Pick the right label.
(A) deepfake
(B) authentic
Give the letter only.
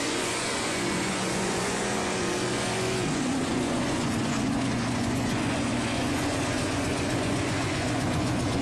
A